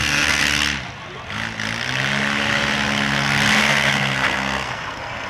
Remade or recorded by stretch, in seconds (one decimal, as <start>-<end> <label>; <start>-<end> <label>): 0.0-0.4 remade; 0.4-3.6 recorded; 3.6-5.3 remade